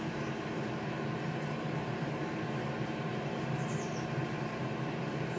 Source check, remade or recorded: remade